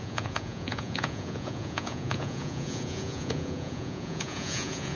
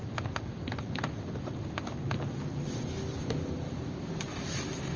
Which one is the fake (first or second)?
first